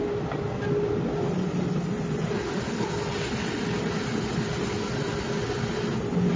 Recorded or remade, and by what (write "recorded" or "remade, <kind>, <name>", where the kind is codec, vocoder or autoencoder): recorded